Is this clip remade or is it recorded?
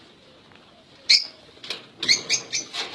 recorded